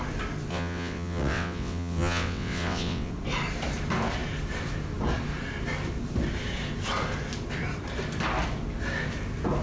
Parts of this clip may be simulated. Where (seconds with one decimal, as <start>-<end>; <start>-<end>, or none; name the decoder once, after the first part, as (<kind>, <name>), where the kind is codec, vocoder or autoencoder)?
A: 0.5-3.1 (vocoder, WaveNeXt)